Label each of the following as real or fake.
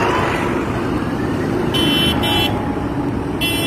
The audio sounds real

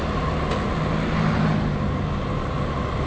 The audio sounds real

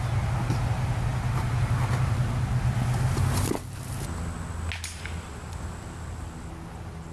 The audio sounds real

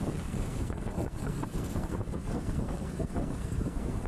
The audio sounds fake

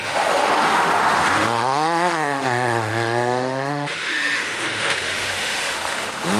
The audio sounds fake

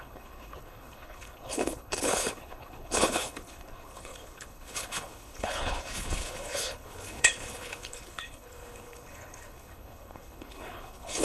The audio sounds fake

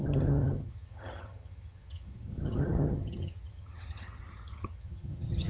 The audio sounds fake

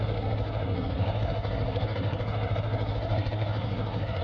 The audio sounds fake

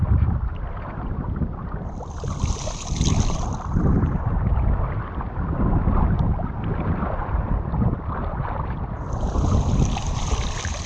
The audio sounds fake